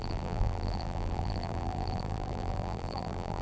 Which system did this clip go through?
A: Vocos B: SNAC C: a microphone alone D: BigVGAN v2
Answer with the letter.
D